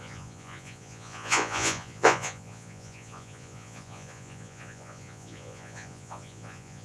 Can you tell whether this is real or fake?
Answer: fake